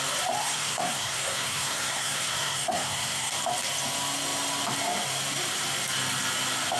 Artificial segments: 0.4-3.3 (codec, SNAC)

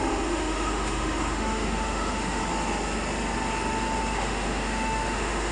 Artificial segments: 0.0-2.4 (autoencoder, DAC-VAE); 4.0-5.5

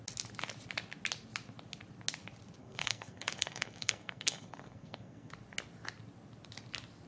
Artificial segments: 2.6-5.3 (codec, SNAC)

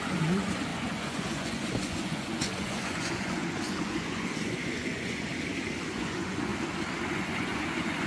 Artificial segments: 0.0-5.3 (vocoder, Vocos); 5.9-6.5; 7.1-8.1

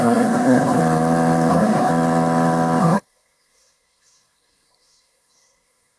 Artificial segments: 0.0-0.8 (codec, SNAC); 1.5-1.9; 2.8-6.0

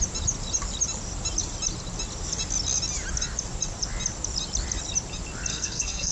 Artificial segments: 5.5-6.1 (codec, SNAC)